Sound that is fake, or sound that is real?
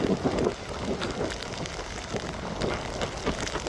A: real